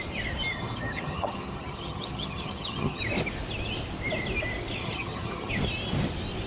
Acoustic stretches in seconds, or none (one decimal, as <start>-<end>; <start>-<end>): 0.0-0.5; 3.0-4.8; 5.5-6.5